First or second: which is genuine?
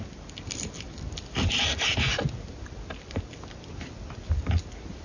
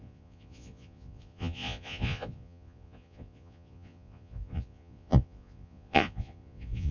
first